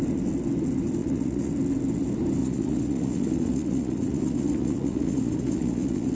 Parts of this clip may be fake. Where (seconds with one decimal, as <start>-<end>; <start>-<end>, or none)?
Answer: 1.0-1.5; 2.4-6.1